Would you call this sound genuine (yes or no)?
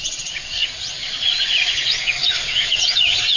no